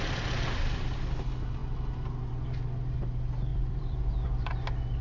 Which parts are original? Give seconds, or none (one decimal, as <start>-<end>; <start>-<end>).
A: 0.0-3.5; 4.5-5.0